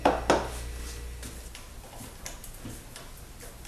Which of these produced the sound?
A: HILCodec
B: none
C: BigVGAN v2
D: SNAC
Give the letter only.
B